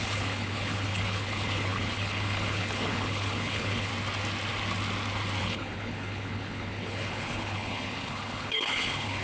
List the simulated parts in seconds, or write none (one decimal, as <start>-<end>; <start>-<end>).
0.0-3.9; 5.4-9.2